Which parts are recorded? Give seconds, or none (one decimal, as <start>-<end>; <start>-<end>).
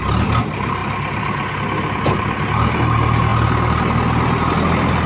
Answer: 0.0-5.1